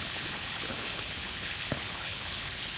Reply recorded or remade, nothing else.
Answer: remade